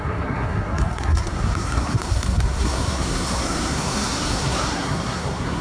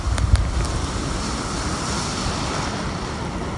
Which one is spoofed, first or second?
first